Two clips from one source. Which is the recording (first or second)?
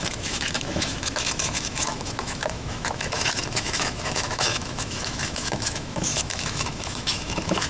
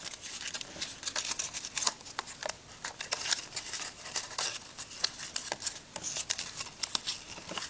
second